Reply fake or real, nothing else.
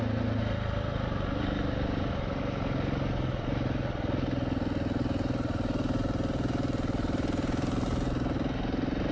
real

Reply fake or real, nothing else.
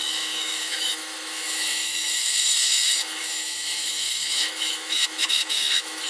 fake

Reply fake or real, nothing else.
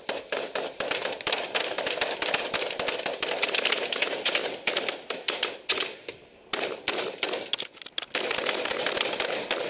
real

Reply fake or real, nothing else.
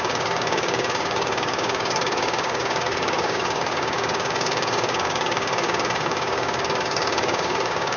fake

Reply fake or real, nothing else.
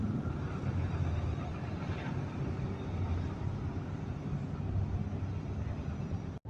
real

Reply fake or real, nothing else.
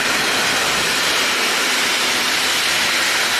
real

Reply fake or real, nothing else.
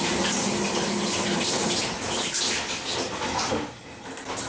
real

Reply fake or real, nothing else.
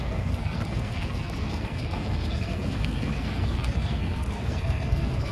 fake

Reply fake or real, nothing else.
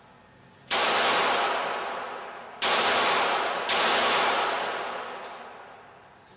real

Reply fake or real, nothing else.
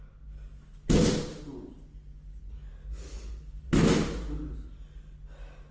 real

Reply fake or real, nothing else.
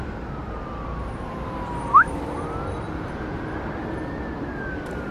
real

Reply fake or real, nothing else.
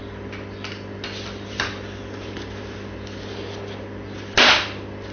real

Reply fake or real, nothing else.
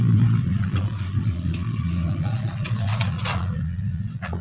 fake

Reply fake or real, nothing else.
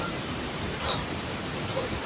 fake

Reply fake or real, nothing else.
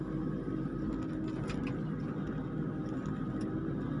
real